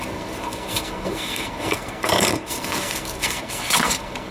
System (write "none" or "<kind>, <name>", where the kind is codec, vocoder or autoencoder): codec, SNAC